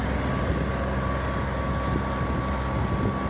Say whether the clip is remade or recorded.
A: recorded